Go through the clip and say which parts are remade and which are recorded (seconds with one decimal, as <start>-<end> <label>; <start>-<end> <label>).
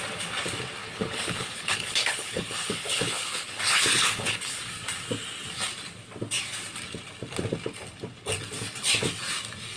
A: 0.0-0.8 recorded; 0.8-4.6 remade; 4.6-9.8 recorded